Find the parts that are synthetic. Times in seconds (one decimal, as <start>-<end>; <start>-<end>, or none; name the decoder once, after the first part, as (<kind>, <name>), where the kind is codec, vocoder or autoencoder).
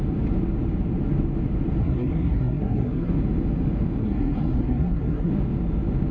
1.8-3.1 (codec, SNAC); 4.0-5.3